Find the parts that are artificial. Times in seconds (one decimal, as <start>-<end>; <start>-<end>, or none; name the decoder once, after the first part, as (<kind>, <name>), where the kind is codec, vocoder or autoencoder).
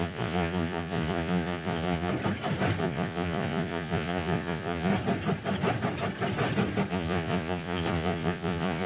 0.0-2.1 (vocoder, Vocos); 2.8-4.9; 6.9-8.9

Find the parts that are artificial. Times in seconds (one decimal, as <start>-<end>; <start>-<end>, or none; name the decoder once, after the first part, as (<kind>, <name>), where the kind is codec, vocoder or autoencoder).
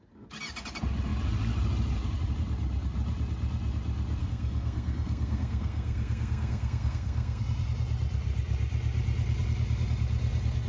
4.2-7.4 (codec, SNAC)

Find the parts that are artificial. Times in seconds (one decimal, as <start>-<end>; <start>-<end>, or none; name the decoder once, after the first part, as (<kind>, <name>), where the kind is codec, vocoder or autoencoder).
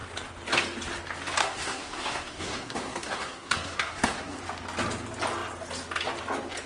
1.4-4.4 (codec, SNAC)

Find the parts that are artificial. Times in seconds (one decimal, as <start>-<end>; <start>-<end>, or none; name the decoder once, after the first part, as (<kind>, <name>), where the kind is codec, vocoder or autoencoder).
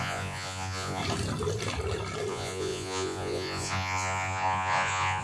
0.0-1.0 (vocoder, Vocos); 2.3-5.2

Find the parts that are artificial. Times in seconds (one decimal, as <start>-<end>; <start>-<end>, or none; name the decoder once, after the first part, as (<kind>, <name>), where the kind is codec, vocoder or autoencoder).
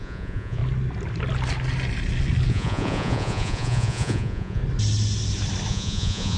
0.0-0.6 (vocoder, Vocos); 2.5-4.6; 5.7-6.4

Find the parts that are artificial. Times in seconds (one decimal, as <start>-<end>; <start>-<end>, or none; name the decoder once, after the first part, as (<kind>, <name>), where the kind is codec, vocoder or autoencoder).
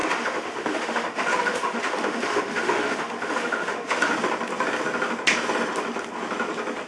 0.0-4.1 (autoencoder, DAC-VAE)